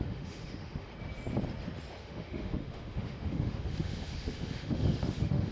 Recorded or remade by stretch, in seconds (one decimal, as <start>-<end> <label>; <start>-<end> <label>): 0.0-0.9 remade; 0.9-2.0 recorded; 2.0-5.5 remade